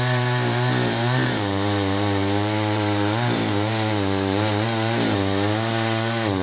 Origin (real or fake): fake